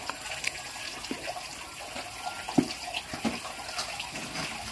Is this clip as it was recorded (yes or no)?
yes